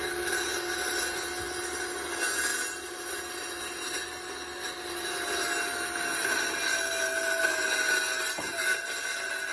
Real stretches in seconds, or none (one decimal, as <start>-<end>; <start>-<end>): 0.0-9.5